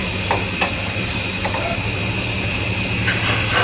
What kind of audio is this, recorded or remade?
recorded